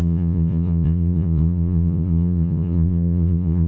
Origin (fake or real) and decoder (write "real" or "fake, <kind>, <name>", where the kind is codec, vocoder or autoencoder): fake, vocoder, Vocos